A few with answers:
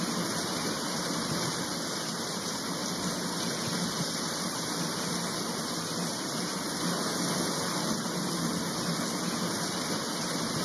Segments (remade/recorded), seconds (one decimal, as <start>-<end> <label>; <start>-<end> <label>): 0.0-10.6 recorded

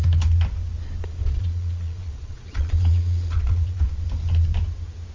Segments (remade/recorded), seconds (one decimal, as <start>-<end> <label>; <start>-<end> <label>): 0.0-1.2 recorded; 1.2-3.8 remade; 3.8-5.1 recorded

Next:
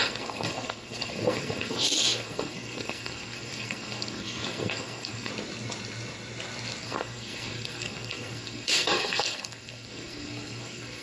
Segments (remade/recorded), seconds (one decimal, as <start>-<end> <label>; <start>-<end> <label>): 0.0-5.3 remade; 5.3-6.8 recorded; 6.8-11.0 remade

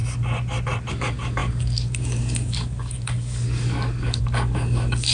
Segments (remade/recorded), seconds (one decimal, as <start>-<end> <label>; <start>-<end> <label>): 0.0-0.9 recorded; 0.9-5.1 remade

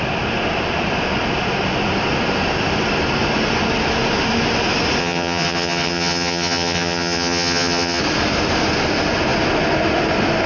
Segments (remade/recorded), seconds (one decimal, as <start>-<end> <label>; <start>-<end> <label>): 0.0-5.0 recorded; 5.0-8.0 remade; 8.0-10.5 recorded

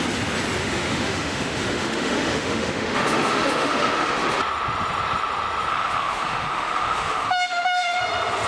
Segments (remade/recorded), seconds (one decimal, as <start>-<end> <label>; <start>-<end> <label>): 0.0-0.6 recorded; 0.6-4.4 remade; 4.4-5.7 recorded; 5.7-8.0 remade; 8.0-8.5 recorded

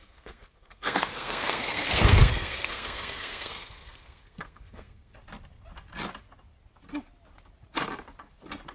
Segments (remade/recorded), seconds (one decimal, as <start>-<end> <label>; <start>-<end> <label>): 0.0-5.1 remade; 5.1-8.7 recorded

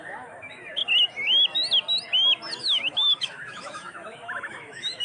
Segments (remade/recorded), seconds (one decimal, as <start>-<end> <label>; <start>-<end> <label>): 0.0-0.8 remade; 0.8-2.6 recorded; 2.6-5.0 remade